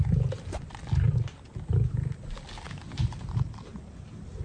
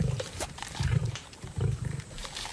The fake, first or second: second